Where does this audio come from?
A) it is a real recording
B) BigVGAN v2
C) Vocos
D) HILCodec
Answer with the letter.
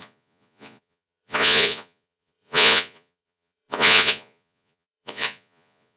C